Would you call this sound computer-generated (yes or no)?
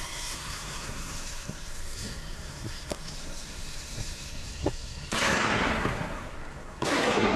yes